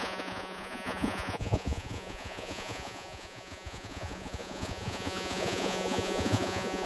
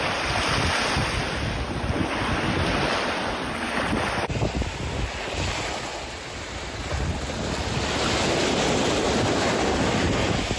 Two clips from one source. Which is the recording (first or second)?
second